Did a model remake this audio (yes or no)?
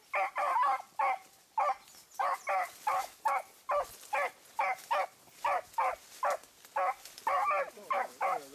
no